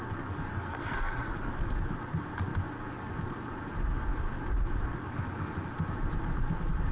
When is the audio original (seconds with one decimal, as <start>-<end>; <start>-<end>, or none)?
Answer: 0.0-0.5; 1.3-6.9